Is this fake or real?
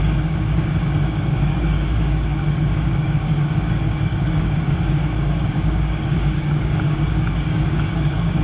fake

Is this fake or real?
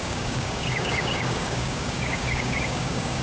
fake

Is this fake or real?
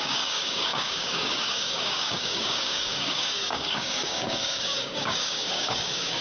fake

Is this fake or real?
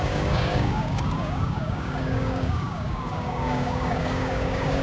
fake